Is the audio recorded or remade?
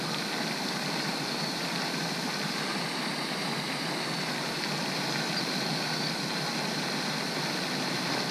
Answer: recorded